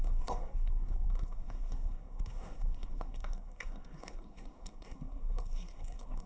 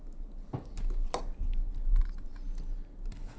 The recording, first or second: second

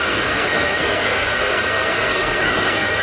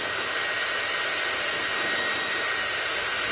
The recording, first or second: second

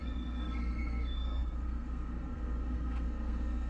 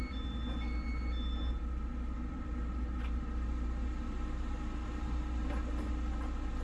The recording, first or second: second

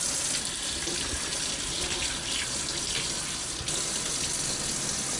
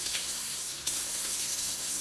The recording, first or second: first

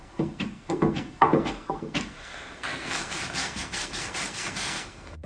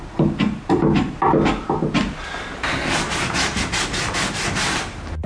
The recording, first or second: second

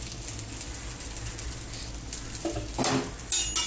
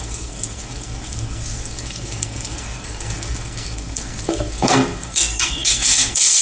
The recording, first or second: first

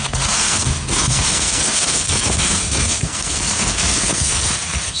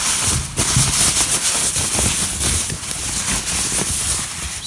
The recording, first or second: second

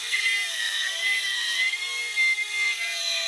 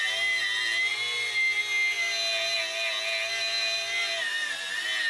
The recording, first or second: second